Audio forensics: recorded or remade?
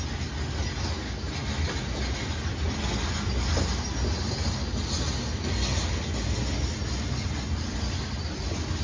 recorded